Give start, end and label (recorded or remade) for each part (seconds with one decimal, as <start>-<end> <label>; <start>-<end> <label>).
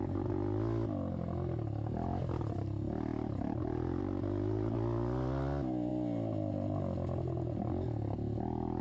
0.0-8.8 recorded